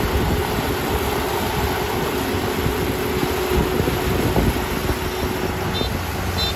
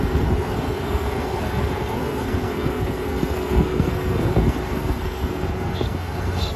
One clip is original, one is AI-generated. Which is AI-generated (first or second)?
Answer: second